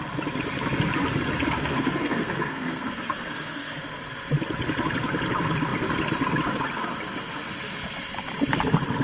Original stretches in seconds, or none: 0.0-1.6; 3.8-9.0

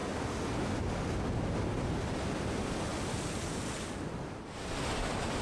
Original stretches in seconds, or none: 0.0-5.4

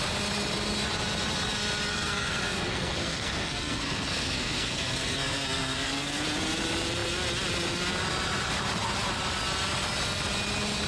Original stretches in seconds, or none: 0.0-1.9; 6.2-10.9

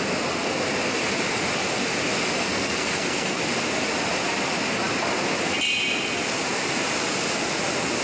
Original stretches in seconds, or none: 0.0-2.5; 3.4-8.0

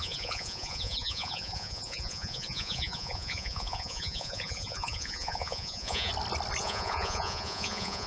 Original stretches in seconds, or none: 6.1-6.6

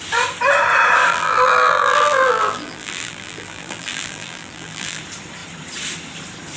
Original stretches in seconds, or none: 0.0-1.1; 5.0-6.6